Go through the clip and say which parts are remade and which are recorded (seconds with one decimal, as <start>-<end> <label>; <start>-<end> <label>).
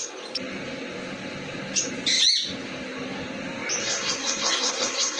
0.0-3.8 recorded; 3.8-5.2 remade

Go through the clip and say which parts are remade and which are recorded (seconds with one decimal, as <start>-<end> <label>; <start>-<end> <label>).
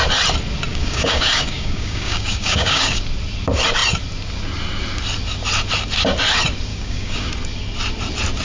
0.0-0.7 recorded; 0.7-3.0 remade; 3.0-6.7 recorded; 6.7-7.3 remade; 7.3-8.4 recorded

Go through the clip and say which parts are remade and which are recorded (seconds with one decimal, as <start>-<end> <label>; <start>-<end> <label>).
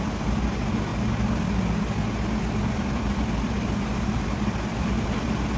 0.0-0.9 remade; 0.9-2.7 recorded; 2.7-5.6 remade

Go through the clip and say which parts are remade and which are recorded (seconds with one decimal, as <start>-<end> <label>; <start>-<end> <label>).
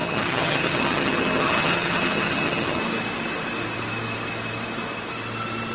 0.0-2.8 remade; 2.8-5.7 recorded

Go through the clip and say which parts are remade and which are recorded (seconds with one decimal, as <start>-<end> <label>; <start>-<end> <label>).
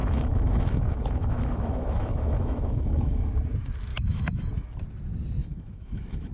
0.0-3.3 remade; 3.3-3.9 recorded; 3.9-4.5 remade; 4.5-5.4 recorded; 5.4-6.3 remade